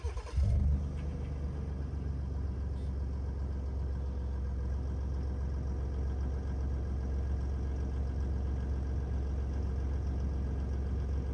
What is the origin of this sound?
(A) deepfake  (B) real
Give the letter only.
B